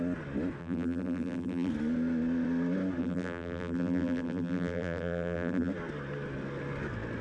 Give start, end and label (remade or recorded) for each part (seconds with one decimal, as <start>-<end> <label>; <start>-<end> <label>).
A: 0.0-0.6 recorded; 0.6-1.7 remade; 1.7-3.0 recorded; 3.0-5.7 remade; 5.7-7.2 recorded

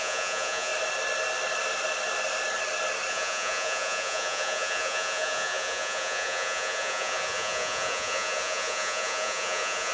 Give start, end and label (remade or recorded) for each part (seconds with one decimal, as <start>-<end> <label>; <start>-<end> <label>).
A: 0.0-0.7 remade; 0.7-3.1 recorded; 3.1-9.9 remade

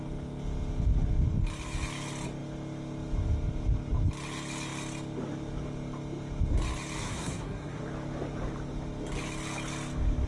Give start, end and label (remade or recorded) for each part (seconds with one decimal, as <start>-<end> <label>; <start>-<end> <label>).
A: 0.0-7.0 recorded; 7.0-7.8 remade; 7.8-10.3 recorded

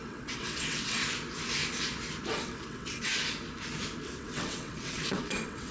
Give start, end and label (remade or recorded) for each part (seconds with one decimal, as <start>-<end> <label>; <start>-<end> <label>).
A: 0.0-1.0 remade; 1.0-2.3 recorded; 2.3-3.1 remade; 3.1-4.0 recorded; 4.0-5.7 remade

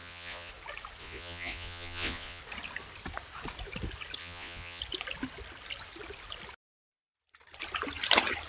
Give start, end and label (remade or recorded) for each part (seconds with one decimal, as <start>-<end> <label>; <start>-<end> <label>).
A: 0.0-0.5 remade; 0.5-1.0 recorded; 1.0-2.4 remade; 2.4-4.2 recorded; 4.2-4.8 remade; 4.8-8.5 recorded

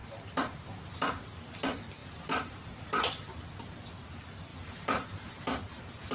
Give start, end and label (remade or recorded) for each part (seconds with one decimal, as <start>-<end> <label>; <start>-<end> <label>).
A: 0.0-1.4 remade; 1.4-2.0 recorded; 2.0-3.5 remade; 3.5-4.5 recorded; 4.5-5.4 remade; 5.4-6.1 recorded

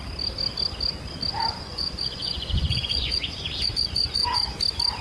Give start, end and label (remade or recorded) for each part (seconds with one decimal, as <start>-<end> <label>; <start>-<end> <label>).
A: 0.0-1.6 recorded; 1.6-4.6 remade; 4.6-5.0 recorded